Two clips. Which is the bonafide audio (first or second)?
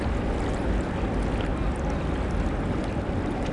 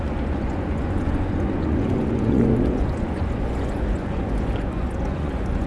first